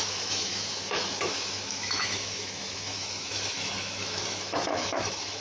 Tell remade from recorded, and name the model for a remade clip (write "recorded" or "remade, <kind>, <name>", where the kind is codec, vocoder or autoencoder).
remade, autoencoder, DAC-VAE